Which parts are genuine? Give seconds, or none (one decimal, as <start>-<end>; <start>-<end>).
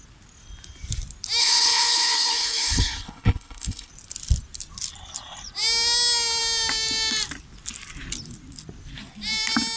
0.0-1.4; 3.9-9.8